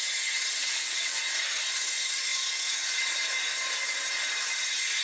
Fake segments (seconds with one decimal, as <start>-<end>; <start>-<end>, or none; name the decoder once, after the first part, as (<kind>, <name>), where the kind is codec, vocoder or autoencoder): 0.6-1.2 (vocoder, WaveNeXt)